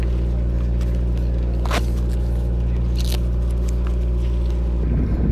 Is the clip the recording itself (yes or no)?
yes